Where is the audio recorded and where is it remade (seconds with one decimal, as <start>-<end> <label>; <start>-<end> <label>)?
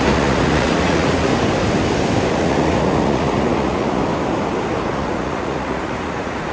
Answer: 0.0-1.3 remade; 1.3-2.3 recorded; 2.3-4.0 remade; 4.0-4.9 recorded; 4.9-6.5 remade